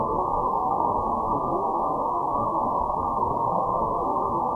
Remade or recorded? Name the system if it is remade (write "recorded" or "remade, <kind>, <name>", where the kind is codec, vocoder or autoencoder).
remade, codec, SNAC